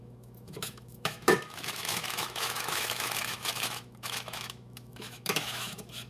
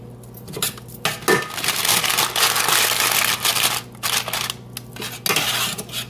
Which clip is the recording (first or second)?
second